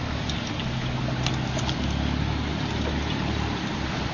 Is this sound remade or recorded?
recorded